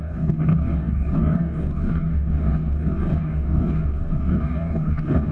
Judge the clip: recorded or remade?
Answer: remade